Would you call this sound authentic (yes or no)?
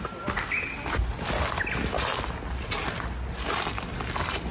yes